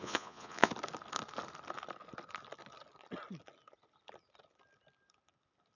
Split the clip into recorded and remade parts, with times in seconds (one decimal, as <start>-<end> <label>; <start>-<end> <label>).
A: 0.0-0.7 remade; 0.7-5.8 recorded